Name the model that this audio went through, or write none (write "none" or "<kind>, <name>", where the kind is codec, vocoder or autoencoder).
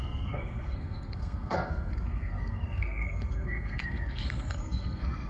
codec, SNAC